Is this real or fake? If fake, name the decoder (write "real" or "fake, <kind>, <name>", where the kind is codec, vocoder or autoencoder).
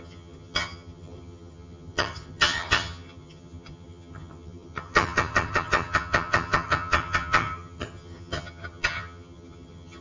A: fake, vocoder, HiFi-GAN